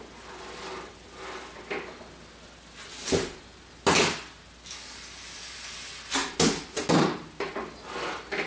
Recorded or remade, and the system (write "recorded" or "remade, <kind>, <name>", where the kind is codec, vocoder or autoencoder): recorded